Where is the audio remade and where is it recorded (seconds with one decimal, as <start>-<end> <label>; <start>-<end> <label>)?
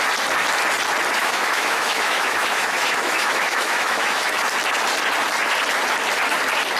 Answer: 0.0-1.2 recorded; 1.2-4.4 remade; 4.4-6.8 recorded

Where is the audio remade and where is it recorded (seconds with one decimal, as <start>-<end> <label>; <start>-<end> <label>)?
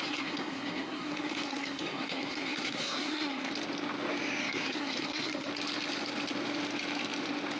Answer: 0.0-3.5 remade; 3.5-4.4 recorded; 4.4-5.5 remade; 5.5-7.6 recorded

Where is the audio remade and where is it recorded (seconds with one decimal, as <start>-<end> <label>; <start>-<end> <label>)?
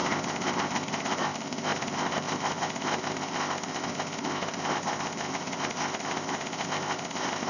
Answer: 0.0-7.5 remade